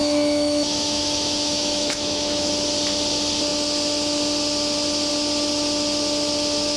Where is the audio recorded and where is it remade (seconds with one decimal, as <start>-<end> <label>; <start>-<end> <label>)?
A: 0.0-2.5 remade; 2.5-6.8 recorded